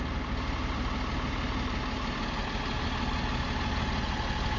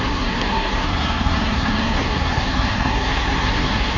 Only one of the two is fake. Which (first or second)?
second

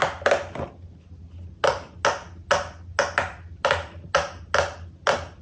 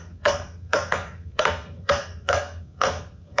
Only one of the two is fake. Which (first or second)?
second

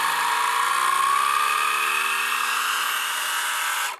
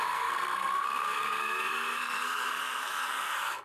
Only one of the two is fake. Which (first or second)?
second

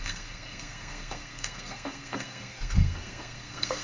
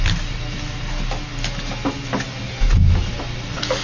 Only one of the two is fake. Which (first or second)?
first